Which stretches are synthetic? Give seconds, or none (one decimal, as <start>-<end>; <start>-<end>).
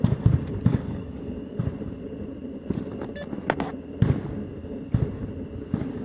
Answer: 0.7-1.6